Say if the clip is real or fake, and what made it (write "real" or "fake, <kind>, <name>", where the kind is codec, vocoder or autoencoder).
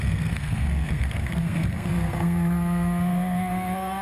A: fake, codec, SNAC